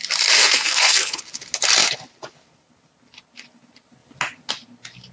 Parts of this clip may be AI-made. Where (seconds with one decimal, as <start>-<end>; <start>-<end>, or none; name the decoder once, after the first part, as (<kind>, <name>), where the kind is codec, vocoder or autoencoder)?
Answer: 0.4-1.2 (codec, SNAC)